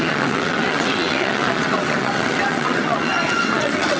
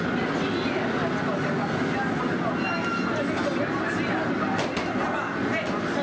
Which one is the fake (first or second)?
first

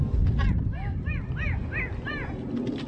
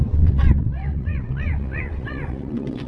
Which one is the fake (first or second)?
second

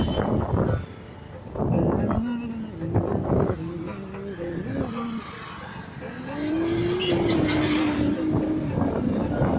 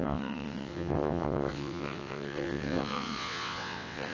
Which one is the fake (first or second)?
second